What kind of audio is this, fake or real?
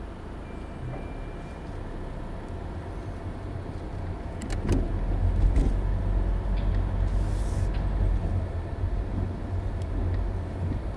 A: real